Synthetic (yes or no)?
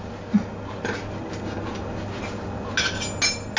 no